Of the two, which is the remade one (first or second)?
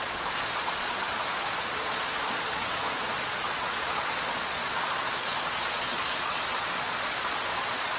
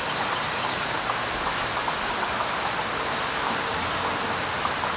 first